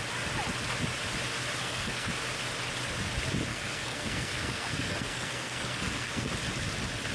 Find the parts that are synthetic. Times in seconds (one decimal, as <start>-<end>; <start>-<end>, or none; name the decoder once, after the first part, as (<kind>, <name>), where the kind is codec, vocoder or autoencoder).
1.6-2.1 (codec, SNAC); 3.5-6.3